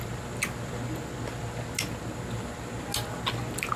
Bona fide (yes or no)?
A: yes